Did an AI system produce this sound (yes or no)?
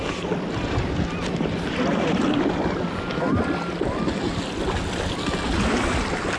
no